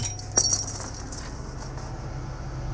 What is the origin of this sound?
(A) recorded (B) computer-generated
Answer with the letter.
A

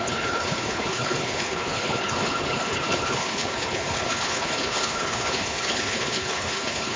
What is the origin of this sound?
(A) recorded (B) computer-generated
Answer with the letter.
B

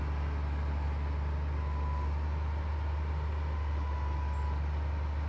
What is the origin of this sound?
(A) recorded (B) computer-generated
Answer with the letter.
A